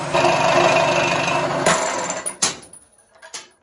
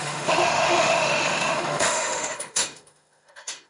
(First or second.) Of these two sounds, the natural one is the first